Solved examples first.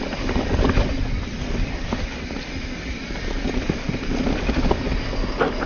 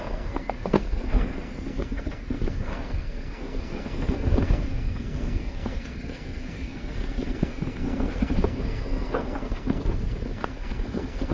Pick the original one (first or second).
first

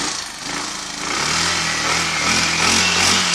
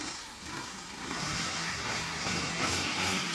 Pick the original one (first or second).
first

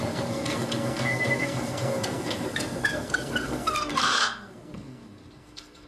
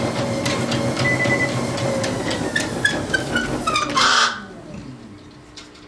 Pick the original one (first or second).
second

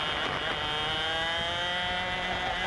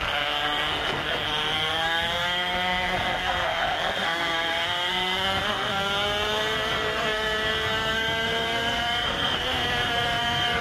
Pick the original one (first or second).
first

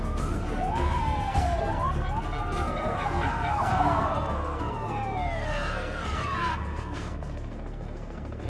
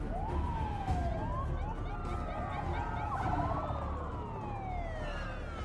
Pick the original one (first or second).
second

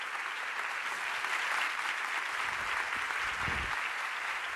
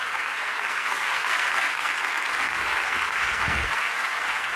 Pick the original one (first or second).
first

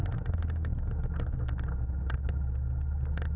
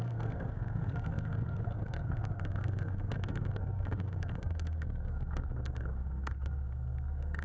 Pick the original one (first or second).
first